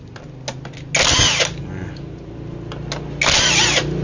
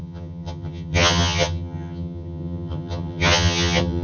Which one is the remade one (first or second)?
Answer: second